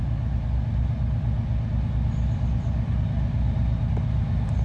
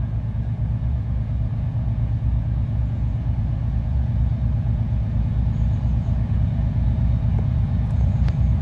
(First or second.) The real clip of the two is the first